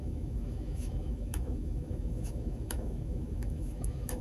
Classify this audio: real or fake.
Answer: fake